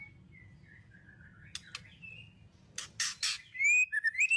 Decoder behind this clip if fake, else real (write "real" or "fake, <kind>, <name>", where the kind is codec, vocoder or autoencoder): real